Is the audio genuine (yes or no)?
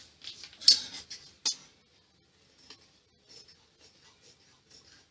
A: yes